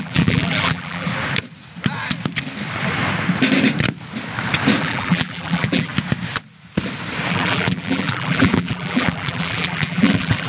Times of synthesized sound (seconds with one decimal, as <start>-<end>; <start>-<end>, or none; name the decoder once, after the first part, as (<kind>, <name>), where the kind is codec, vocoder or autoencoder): 0.0-1.1 (vocoder, BigVGAN v2); 4.8-5.9; 7.3-10.5